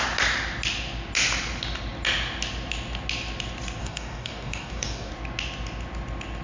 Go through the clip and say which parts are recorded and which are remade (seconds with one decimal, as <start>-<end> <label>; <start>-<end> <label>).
0.0-3.8 recorded; 3.8-5.1 remade; 5.1-6.4 recorded